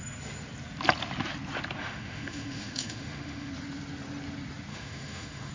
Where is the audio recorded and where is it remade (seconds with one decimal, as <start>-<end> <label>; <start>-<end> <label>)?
0.0-1.8 recorded; 1.8-3.5 remade; 3.5-4.7 recorded; 4.7-5.5 remade